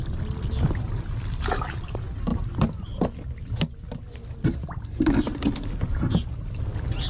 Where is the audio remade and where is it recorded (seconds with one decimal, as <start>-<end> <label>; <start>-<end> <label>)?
0.0-7.1 recorded